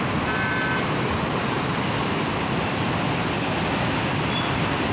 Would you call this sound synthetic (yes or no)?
no